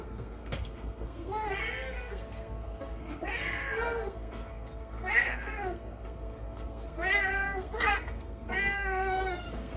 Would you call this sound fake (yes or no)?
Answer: yes